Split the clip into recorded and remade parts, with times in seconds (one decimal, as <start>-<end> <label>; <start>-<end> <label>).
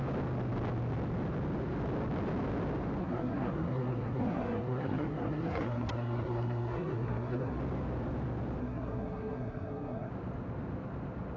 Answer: 0.0-3.0 recorded; 3.0-7.6 remade; 7.6-8.6 recorded; 8.6-10.1 remade; 10.1-11.4 recorded